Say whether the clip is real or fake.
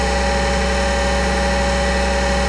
fake